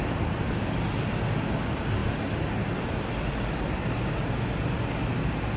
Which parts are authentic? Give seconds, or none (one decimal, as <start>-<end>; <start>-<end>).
0.0-5.6